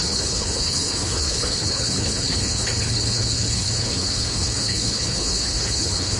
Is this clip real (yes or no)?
no